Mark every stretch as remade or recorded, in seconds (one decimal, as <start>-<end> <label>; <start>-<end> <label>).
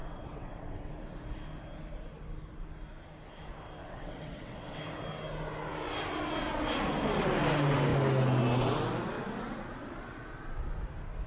0.0-0.9 remade; 0.9-3.8 recorded; 3.8-4.8 remade; 4.8-11.3 recorded